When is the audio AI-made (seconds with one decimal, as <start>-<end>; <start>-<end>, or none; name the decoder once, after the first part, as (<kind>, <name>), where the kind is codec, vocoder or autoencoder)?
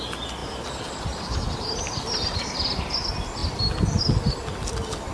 0.4-2.8 (vocoder, BigVGAN v2)